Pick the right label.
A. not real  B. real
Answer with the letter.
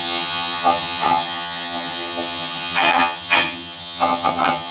A